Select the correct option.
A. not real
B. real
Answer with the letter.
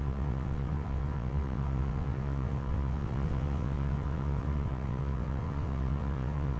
A